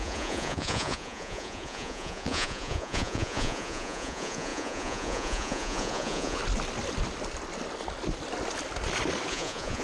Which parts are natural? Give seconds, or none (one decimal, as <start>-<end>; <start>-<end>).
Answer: 6.4-9.3